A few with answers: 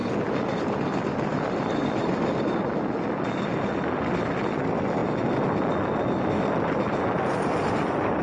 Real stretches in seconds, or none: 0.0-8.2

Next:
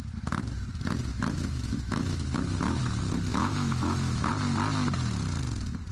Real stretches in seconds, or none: 0.0-1.1; 2.8-3.3; 4.3-5.9

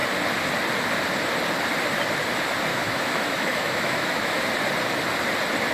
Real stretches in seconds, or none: 0.0-2.7; 4.4-5.7

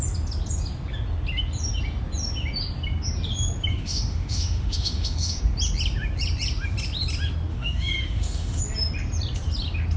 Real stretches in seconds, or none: 0.0-3.7; 5.4-7.5; 8.6-10.0

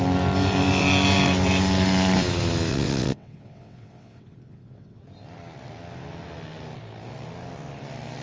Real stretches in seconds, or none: 0.0-2.7; 5.0-8.2

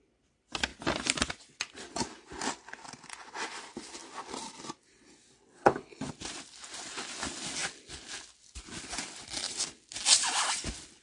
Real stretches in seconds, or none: 0.0-5.6; 6.1-11.0

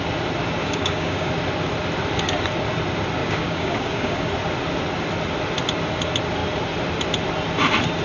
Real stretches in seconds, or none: 0.0-0.6; 1.3-3.2; 4.3-8.0